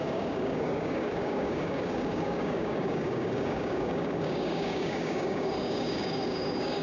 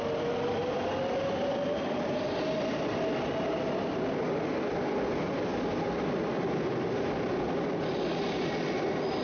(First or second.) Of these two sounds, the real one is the second